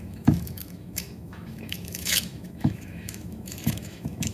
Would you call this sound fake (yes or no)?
yes